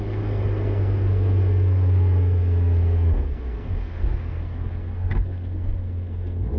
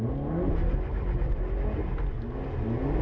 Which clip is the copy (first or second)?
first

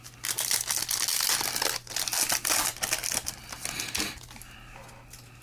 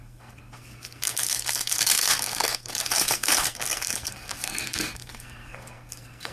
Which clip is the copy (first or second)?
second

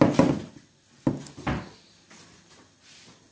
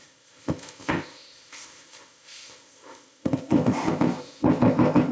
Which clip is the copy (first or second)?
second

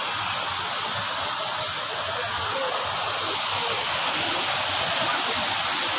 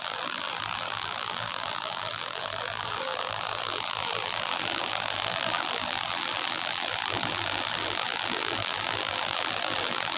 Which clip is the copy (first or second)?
second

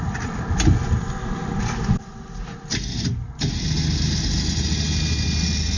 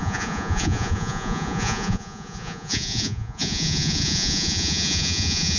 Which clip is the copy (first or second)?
second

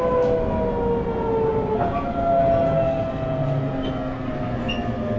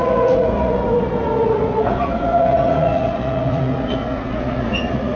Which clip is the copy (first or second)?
second